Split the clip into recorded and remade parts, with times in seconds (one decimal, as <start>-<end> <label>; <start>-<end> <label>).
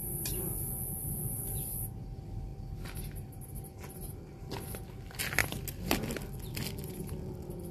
0.0-7.7 recorded